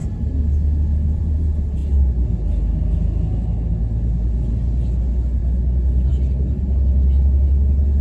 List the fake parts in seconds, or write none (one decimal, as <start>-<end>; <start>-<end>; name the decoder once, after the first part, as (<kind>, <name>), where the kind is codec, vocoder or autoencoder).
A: none